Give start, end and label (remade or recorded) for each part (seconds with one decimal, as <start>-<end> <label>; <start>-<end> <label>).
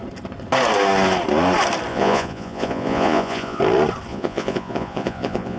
0.0-1.9 recorded; 1.9-3.6 remade; 3.6-4.1 recorded; 4.1-5.6 remade